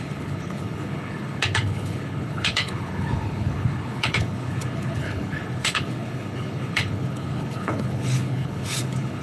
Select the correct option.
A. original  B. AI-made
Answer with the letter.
B